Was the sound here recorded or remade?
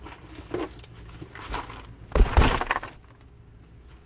recorded